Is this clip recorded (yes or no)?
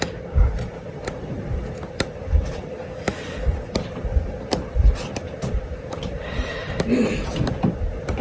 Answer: no